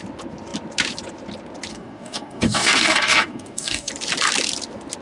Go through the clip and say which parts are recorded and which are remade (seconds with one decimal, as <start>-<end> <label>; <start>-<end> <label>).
0.0-1.7 recorded; 1.7-3.9 remade; 3.9-5.0 recorded